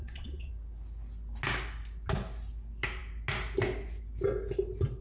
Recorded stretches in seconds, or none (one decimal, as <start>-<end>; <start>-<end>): 0.5-5.0